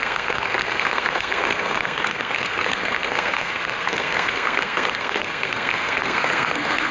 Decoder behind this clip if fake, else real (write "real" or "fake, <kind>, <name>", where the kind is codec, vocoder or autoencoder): fake, codec, SNAC